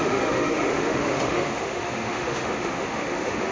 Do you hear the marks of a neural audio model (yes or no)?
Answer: yes